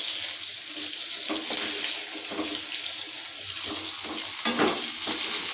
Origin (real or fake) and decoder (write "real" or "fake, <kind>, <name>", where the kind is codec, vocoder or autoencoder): real